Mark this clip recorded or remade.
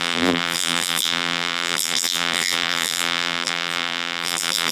remade